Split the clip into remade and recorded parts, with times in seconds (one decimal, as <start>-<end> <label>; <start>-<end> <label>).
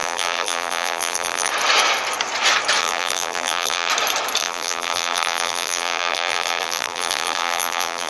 0.0-1.5 remade; 1.5-2.8 recorded; 2.8-3.9 remade; 3.9-4.4 recorded; 4.4-8.1 remade